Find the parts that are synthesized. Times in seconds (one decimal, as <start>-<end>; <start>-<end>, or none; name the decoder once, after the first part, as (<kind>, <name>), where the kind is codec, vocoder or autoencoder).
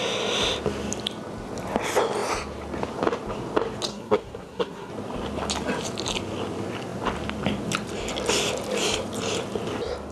3.9-4.9 (codec, SNAC)